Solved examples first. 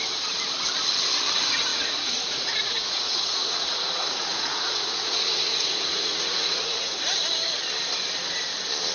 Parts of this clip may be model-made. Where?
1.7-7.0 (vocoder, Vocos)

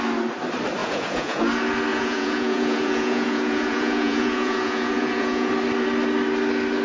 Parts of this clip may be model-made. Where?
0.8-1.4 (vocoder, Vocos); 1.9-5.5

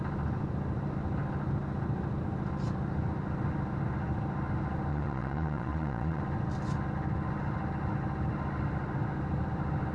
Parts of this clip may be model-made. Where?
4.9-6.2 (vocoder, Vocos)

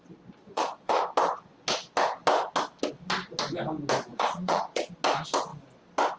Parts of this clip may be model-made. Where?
0.4-1.0 (vocoder, Vocos); 4.1-4.9